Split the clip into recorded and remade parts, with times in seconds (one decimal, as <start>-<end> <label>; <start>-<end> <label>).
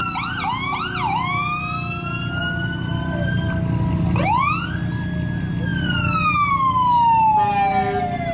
0.0-8.3 recorded